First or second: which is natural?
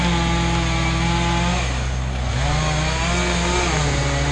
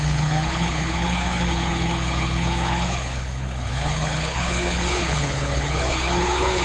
first